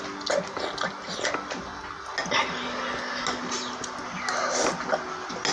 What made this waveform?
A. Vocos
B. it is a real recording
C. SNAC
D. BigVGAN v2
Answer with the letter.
B